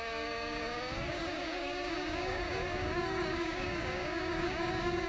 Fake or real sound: fake